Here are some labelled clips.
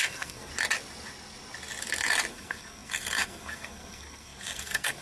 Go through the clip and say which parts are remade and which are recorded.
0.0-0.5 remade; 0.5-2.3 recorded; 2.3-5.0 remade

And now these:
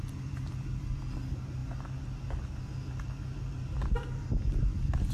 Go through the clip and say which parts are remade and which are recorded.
0.0-5.1 recorded

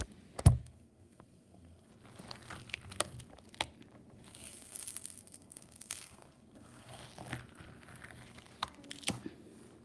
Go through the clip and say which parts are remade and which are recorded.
0.0-0.6 recorded; 0.6-1.9 remade; 1.9-4.3 recorded; 4.3-7.0 remade; 7.0-9.8 recorded